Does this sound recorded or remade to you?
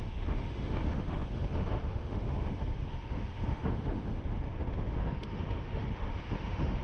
remade